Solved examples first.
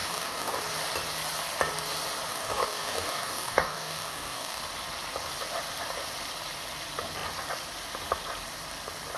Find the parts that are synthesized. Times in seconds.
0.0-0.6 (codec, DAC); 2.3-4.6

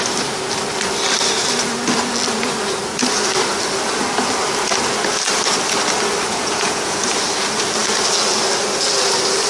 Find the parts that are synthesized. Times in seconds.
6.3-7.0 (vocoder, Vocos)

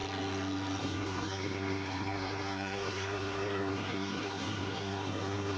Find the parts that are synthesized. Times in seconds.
0.8-5.6 (codec, SNAC)

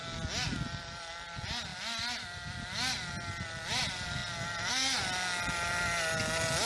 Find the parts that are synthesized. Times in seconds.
none

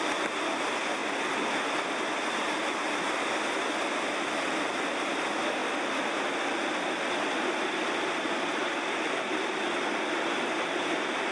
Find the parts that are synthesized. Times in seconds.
1.0-2.0 (vocoder, BigVGAN v2); 5.6-10.8